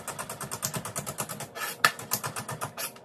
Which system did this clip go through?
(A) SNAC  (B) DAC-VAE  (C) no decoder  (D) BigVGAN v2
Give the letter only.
C